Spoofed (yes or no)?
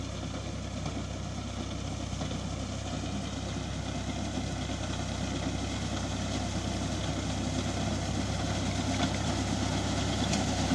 no